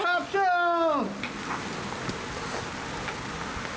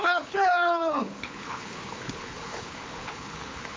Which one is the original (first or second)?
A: first